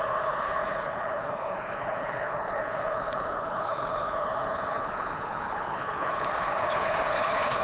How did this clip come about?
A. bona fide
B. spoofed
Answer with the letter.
B